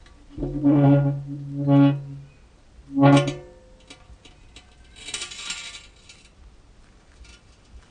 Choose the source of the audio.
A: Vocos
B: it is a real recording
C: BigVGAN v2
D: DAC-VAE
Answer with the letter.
B